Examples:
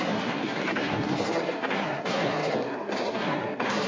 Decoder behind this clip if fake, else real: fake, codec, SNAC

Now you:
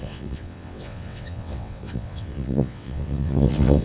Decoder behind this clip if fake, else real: fake, vocoder, WaveNeXt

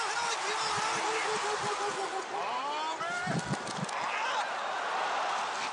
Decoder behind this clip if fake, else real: real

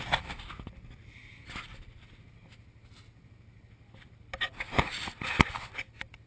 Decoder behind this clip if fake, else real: real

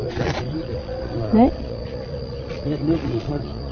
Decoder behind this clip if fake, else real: fake, vocoder, Vocos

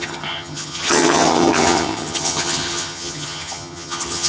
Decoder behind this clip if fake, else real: fake, vocoder, HiFi-GAN